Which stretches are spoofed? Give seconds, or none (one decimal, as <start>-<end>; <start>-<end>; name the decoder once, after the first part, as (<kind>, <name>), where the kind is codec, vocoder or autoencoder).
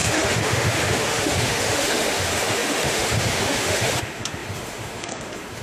0.0-5.6 (autoencoder, DAC-VAE)